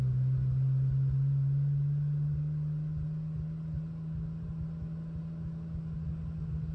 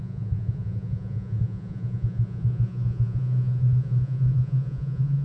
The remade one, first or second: second